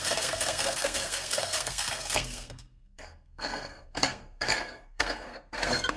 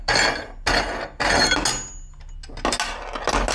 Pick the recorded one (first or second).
second